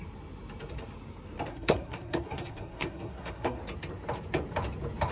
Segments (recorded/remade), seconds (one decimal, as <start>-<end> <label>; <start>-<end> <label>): 0.0-1.5 recorded; 1.5-3.6 remade; 3.6-5.1 recorded